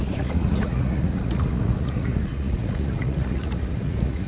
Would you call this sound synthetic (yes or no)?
yes